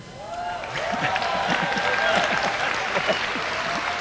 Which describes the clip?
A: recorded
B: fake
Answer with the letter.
A